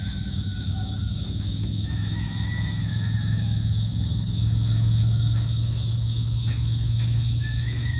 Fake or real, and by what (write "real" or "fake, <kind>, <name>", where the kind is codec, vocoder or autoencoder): fake, autoencoder, DAC-VAE